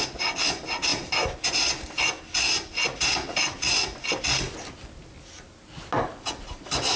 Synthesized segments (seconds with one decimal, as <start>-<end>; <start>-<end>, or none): none